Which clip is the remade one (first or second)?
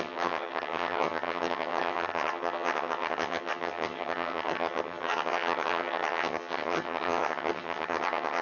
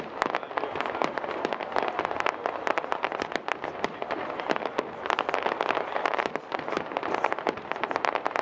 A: first